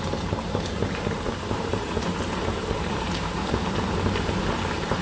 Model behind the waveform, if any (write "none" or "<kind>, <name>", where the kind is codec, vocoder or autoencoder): vocoder, BigVGAN v2